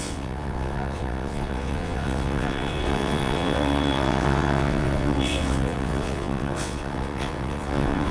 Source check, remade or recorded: remade